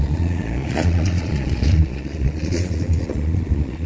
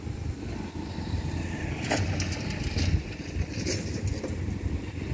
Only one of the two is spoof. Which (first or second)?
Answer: first